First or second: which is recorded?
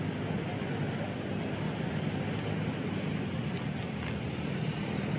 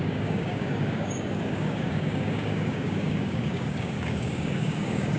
first